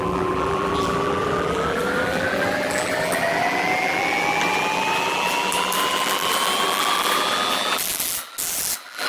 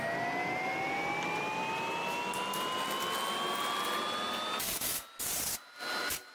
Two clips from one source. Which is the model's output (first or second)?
first